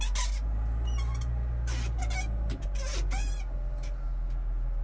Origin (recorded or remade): recorded